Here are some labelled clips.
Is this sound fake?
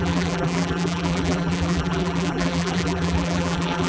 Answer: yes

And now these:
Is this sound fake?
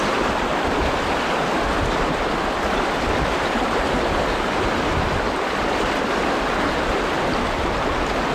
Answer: no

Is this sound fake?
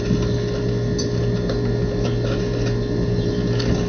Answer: no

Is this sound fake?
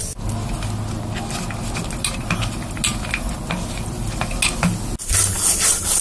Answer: no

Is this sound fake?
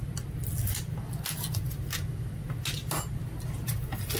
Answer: no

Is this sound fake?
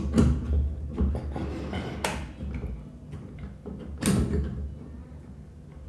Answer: no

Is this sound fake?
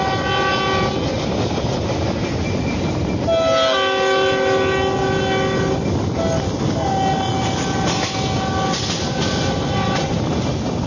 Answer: no